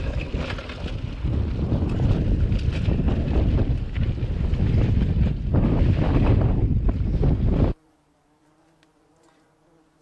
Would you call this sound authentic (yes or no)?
yes